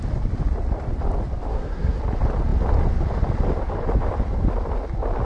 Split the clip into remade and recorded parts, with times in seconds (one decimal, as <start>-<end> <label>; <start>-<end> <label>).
0.0-1.5 recorded; 1.5-2.0 remade; 2.0-5.2 recorded